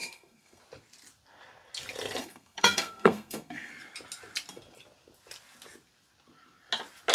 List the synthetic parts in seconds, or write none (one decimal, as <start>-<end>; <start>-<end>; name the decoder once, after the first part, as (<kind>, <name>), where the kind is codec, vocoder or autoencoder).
0.0-0.6 (codec, SNAC); 2.2-3.7